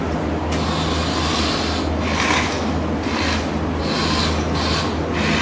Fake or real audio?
real